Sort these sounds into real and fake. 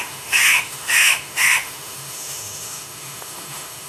fake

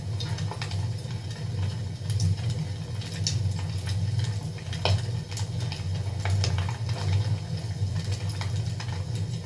real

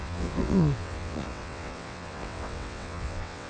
fake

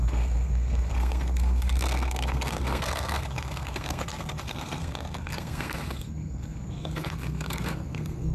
fake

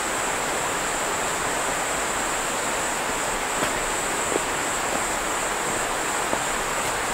real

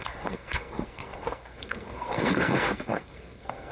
fake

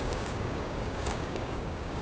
fake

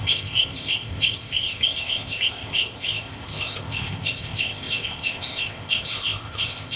fake